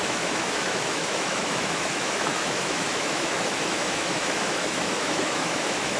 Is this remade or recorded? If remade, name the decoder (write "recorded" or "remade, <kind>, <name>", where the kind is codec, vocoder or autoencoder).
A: remade, autoencoder, DAC-VAE